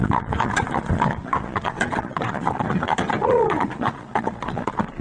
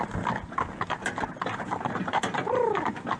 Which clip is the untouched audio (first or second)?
second